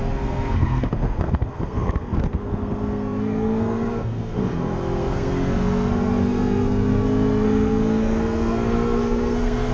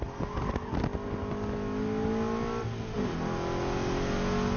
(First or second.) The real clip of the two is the second